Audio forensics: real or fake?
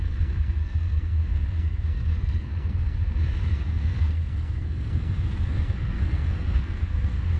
fake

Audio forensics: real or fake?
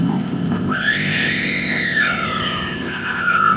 fake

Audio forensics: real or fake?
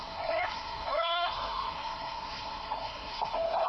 fake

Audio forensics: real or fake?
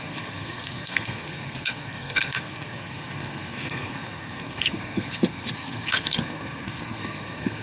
fake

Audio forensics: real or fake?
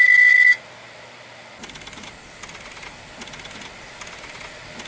real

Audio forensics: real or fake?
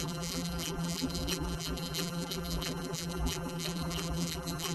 fake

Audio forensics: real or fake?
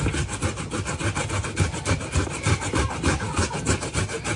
real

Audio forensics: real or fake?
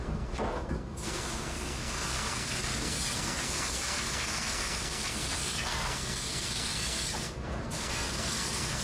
fake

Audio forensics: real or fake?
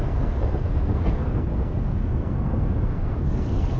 fake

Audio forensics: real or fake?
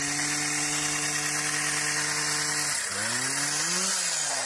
real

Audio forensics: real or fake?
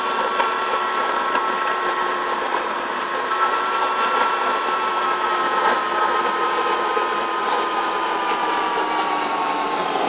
fake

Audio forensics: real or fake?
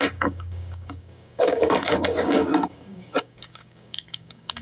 fake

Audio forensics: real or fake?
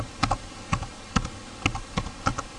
real